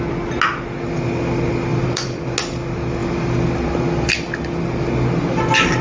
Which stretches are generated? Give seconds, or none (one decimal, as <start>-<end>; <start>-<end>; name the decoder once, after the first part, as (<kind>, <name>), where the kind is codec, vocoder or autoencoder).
1.7-2.2 (vocoder, BigVGAN v2); 3.0-4.1